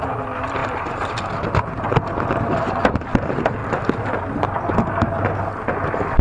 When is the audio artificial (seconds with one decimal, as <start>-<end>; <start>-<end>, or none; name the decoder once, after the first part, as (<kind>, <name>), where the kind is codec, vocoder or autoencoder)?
none